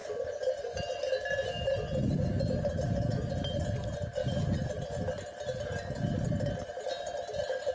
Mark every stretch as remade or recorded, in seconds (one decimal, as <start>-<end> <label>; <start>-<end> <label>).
0.0-7.7 recorded